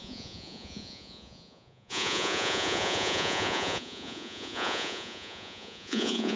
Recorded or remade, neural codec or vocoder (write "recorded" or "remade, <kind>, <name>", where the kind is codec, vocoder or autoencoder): remade, vocoder, Vocos